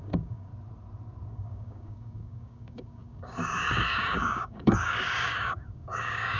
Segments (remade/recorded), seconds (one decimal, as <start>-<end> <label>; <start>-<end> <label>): 0.0-0.5 remade; 0.5-1.3 recorded; 1.3-6.4 remade

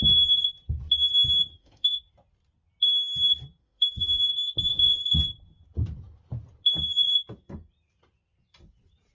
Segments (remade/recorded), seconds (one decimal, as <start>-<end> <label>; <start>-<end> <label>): 0.0-1.5 recorded; 1.5-2.0 remade; 2.0-3.6 recorded; 3.6-4.3 remade; 4.3-4.7 recorded; 4.7-5.2 remade; 5.2-9.1 recorded